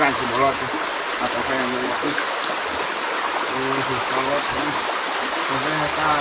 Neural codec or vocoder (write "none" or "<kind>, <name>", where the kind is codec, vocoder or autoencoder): none